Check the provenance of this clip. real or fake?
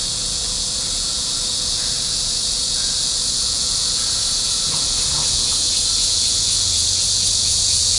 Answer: fake